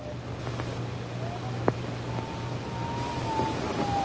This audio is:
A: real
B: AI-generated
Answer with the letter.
A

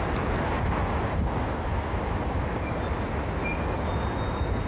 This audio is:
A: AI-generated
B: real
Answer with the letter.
B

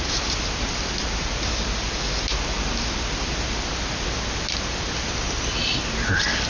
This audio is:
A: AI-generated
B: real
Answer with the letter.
B